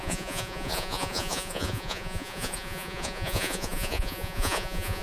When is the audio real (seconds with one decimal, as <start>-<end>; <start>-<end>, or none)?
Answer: none